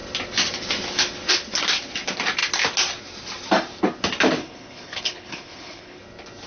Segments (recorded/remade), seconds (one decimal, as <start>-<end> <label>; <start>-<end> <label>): 0.0-4.4 recorded; 4.4-6.0 remade; 6.0-6.5 recorded